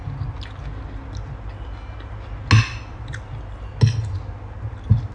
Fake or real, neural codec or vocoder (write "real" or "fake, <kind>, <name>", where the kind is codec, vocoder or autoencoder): real